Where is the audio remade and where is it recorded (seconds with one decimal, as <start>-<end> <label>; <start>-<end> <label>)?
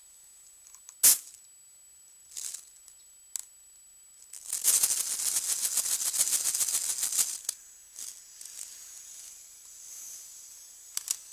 0.0-11.3 recorded